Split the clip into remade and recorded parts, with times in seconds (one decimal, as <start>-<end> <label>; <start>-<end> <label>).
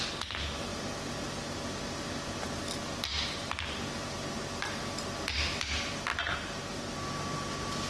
0.0-7.9 recorded